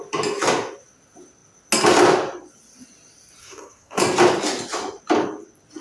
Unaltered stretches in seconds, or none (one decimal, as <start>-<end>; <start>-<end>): 0.0-3.4; 4.0-5.8